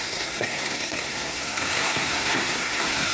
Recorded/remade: remade